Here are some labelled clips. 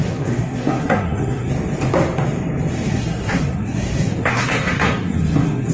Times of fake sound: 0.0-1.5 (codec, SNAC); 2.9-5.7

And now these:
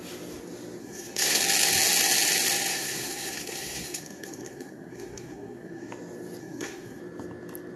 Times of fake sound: 0.8-1.4 (codec, SNAC); 2.7-5.9; 6.4-7.0

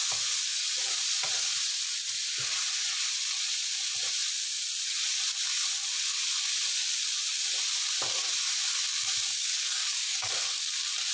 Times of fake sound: 9.3-10.3 (codec, DAC)

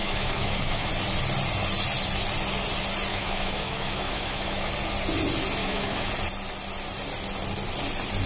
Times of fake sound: 0.0-0.9 (autoencoder, DAC-VAE); 3.1-4.7; 5.6-6.1

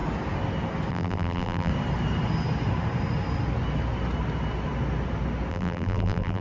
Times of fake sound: 0.9-1.7 (vocoder, BigVGAN v2); 5.5-6.4